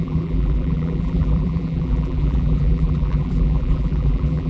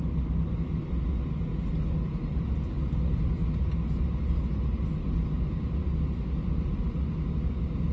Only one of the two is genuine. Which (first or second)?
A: second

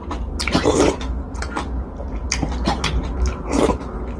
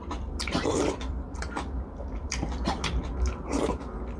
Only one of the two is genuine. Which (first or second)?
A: first